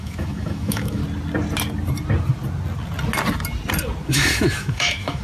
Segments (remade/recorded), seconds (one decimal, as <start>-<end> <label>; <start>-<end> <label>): 0.0-1.0 remade; 1.0-4.1 recorded; 4.1-5.2 remade